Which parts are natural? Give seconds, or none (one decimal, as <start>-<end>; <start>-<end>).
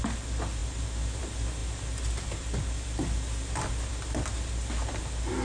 0.0-5.4